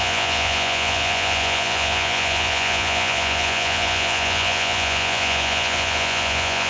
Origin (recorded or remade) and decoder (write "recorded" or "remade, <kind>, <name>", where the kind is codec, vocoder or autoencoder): remade, vocoder, Vocos